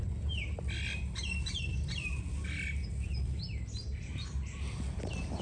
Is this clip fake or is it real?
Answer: real